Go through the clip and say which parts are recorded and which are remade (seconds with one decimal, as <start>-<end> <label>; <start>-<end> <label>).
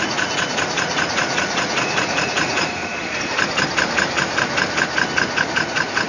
0.0-2.9 remade; 2.9-5.4 recorded; 5.4-6.1 remade